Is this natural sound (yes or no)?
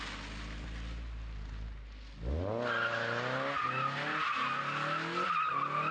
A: yes